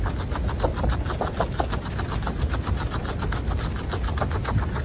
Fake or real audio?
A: real